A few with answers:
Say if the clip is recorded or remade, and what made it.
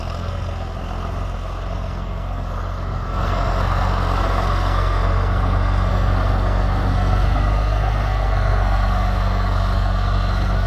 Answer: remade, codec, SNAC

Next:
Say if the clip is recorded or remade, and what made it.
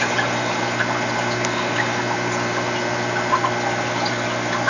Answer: recorded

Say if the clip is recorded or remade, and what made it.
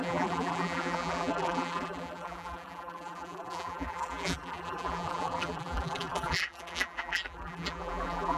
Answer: remade, vocoder, BigVGAN v2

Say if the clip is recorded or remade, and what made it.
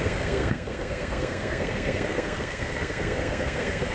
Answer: remade, codec, SNAC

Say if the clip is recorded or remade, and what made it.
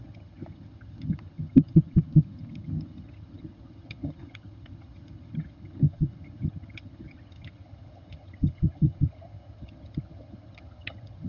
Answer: remade, vocoder, HiFi-GAN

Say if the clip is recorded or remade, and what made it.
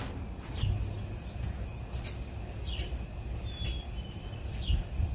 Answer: recorded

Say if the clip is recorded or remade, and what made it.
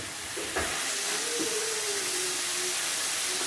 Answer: recorded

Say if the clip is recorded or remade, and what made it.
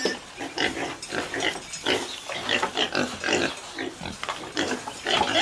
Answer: recorded